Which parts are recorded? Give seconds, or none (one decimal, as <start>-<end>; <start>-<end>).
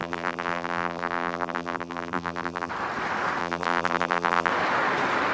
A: 2.7-3.4; 4.5-5.3